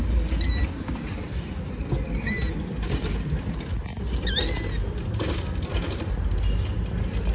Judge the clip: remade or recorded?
recorded